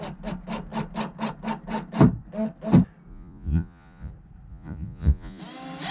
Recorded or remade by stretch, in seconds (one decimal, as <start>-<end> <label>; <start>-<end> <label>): 0.0-3.1 recorded; 3.1-4.1 remade; 4.1-4.5 recorded; 4.5-5.4 remade; 5.4-5.9 recorded